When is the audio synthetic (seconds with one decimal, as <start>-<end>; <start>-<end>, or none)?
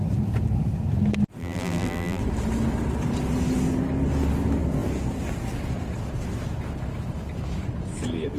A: 1.4-2.2